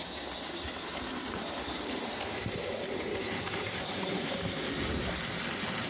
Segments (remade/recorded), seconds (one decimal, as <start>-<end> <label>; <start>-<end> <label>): 0.0-0.9 recorded; 0.9-4.4 remade; 4.4-5.9 recorded